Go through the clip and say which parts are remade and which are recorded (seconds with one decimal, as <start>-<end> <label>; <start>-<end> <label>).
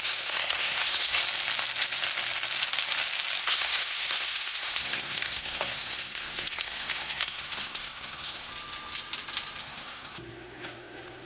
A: 0.0-1.2 remade; 1.2-3.4 recorded; 3.4-8.5 remade; 8.5-9.6 recorded; 9.6-11.3 remade